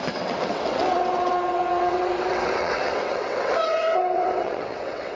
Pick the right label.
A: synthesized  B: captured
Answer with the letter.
A